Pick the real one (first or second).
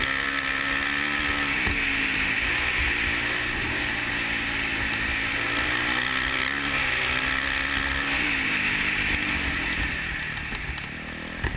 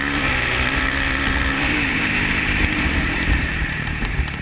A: first